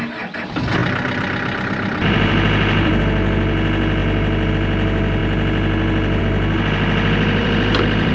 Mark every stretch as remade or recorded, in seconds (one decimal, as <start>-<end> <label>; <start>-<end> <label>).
0.0-0.8 recorded; 0.8-3.0 remade; 3.0-4.0 recorded; 4.0-4.5 remade; 4.5-7.4 recorded; 7.4-8.1 remade